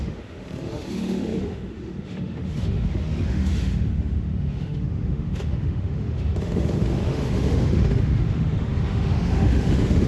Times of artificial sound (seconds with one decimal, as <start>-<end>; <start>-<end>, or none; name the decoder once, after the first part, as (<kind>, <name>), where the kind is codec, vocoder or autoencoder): 0.0-10.1 (autoencoder, DAC-VAE)